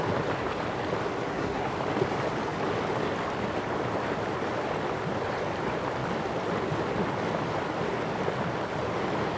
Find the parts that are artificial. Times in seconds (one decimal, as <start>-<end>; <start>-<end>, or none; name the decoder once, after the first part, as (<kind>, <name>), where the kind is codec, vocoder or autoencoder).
1.2-1.7 (codec, SNAC)